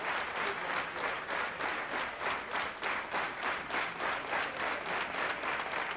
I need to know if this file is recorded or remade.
recorded